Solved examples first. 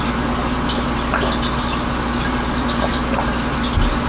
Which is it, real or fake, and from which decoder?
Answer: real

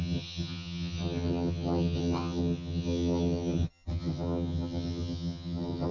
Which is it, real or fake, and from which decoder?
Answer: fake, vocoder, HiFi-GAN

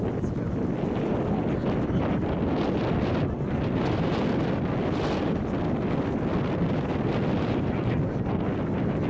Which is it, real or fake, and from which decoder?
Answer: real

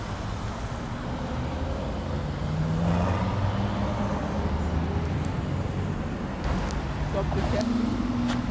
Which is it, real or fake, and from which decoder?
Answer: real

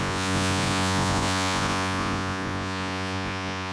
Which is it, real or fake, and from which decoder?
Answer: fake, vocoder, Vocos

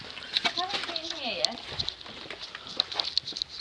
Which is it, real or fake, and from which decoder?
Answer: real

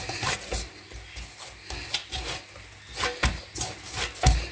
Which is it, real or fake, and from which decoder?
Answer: real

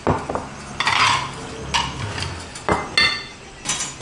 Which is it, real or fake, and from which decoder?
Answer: real